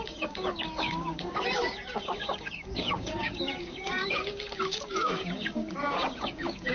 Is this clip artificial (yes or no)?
yes